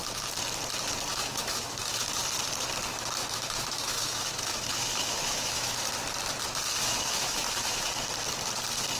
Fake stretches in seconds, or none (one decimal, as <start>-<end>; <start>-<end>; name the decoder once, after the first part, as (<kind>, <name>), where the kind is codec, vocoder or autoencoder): 1.1-2.2 (autoencoder, DAC-VAE); 2.9-5.9; 6.8-7.9